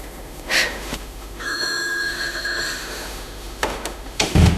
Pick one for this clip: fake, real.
fake